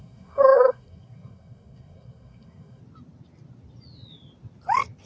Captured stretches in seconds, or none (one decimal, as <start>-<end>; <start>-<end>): 2.8-5.1